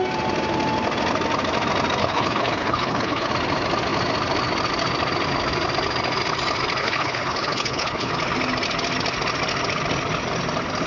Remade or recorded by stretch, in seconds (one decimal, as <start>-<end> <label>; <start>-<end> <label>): 0.0-2.0 recorded; 2.0-3.3 remade; 3.3-6.8 recorded; 6.8-8.1 remade; 8.1-10.9 recorded